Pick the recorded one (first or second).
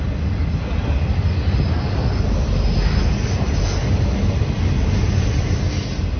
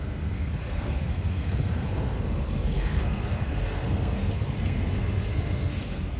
first